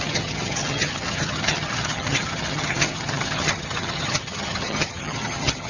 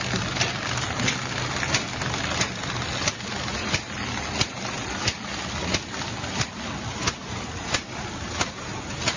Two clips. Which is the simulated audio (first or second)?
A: first